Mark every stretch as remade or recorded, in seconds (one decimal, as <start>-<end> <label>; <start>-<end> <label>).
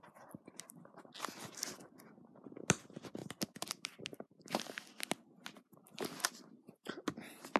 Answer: 0.0-7.6 recorded